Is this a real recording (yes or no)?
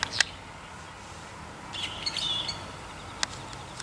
yes